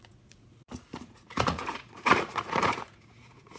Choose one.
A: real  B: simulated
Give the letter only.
B